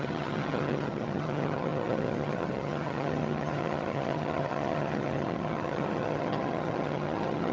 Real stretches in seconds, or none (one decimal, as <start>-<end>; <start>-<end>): none